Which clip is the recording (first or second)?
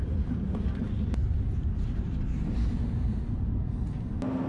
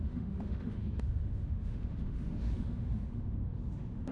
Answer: first